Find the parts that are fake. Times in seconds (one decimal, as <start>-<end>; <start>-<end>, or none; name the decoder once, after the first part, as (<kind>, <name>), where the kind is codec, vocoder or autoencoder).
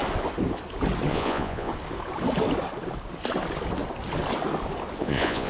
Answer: 1.1-1.7 (vocoder, Vocos); 5.0-5.5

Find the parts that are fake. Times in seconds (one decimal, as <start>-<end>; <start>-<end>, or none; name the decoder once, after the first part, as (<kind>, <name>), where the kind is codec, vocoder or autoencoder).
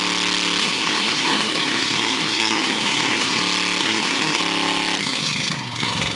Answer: 0.6-3.4 (codec, SNAC); 3.8-4.4; 5.0-6.2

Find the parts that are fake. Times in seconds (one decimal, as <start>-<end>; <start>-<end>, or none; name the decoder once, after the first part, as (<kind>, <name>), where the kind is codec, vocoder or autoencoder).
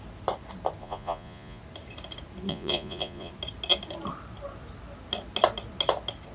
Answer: 0.8-1.6 (vocoder, Vocos); 2.5-3.3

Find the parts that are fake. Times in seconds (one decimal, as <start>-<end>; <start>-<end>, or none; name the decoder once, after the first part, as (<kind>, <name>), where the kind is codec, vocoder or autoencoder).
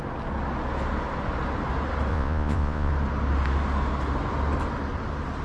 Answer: 2.1-2.9 (vocoder, Vocos)